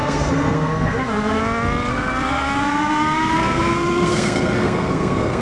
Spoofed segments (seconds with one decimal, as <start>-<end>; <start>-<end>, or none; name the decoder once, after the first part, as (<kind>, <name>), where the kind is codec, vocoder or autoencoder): 0.0-1.4 (codec, SNAC); 1.9-5.4